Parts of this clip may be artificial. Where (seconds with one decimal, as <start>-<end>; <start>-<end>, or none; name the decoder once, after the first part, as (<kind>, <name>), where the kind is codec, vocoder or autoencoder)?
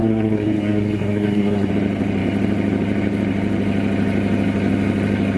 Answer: 0.0-1.7 (codec, SNAC)